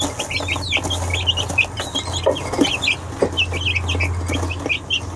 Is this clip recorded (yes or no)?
yes